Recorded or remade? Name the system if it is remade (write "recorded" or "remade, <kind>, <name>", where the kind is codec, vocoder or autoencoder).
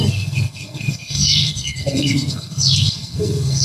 remade, codec, SNAC